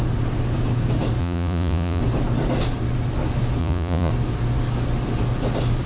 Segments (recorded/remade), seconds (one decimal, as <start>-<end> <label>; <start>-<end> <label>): 0.0-1.2 recorded; 1.2-2.0 remade; 2.0-3.6 recorded; 3.6-4.1 remade; 4.1-5.9 recorded